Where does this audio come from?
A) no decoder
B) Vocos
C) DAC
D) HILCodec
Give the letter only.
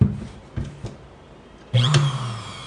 A